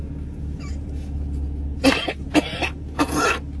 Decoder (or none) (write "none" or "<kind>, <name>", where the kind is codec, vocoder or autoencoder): none